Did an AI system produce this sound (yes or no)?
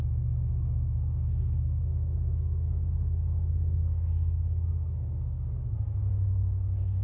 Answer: yes